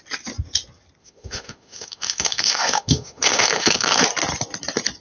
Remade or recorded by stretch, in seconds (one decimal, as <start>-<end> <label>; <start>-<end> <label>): 0.0-1.0 recorded; 1.0-4.0 remade; 4.0-5.0 recorded